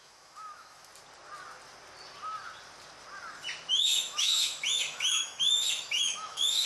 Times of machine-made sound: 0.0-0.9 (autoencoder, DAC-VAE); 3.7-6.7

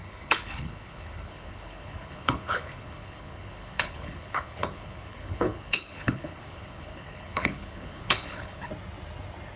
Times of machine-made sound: 0.0-8.7 (codec, HILCodec)

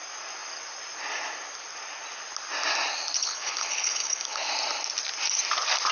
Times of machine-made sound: 3.2-4.5 (codec, HILCodec)

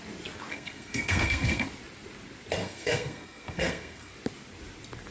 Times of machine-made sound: 0.5-1.7 (codec, SNAC); 2.6-4.1

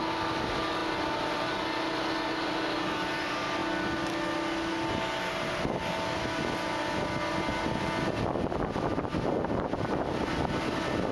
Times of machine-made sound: none

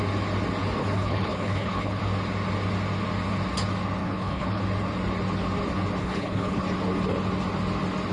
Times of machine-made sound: 0.8-2.0 (codec, HILCodec); 4.0-4.6; 6.0-6.6